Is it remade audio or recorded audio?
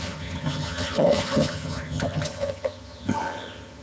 remade